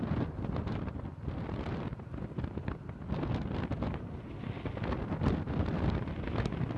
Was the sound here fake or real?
real